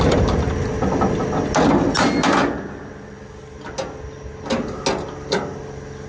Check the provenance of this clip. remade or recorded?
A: recorded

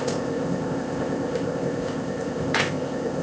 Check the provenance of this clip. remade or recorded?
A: remade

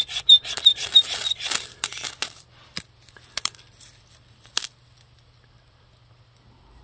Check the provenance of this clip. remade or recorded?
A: recorded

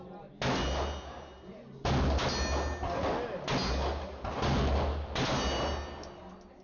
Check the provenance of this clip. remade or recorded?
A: recorded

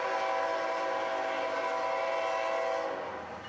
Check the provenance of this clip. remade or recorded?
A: recorded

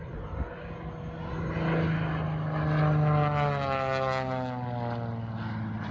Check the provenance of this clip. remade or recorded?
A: recorded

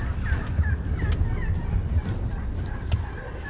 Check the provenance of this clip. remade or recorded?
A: recorded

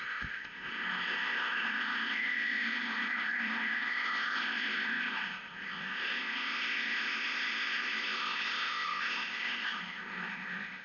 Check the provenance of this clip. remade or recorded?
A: remade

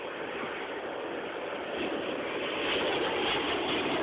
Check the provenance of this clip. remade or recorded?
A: recorded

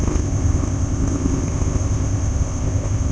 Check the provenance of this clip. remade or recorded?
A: remade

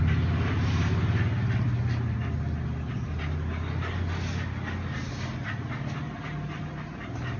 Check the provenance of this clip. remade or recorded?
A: recorded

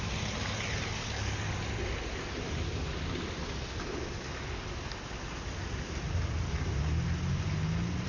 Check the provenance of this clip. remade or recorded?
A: recorded